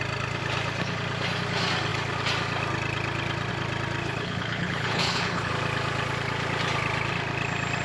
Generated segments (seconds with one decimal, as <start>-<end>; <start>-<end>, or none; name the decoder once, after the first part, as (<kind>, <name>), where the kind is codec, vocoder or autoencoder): 4.0-5.5 (codec, HILCodec)